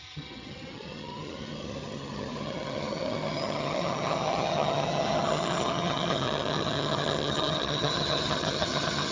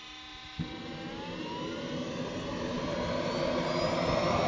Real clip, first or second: second